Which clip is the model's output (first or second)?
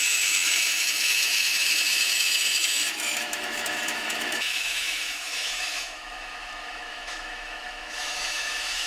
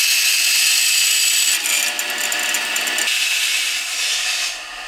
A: first